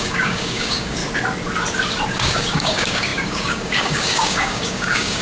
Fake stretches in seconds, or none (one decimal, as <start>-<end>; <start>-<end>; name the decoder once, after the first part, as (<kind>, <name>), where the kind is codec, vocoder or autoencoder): 0.0-1.0 (codec, DAC); 2.1-5.2